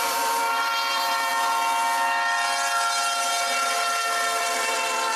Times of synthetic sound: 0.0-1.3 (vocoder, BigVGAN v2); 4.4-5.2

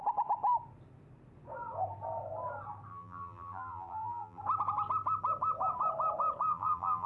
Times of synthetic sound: 2.9-4.4 (vocoder, BigVGAN v2); 6.5-7.1